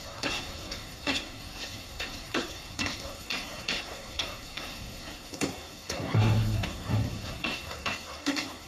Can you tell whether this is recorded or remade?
remade